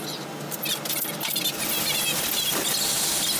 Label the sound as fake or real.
real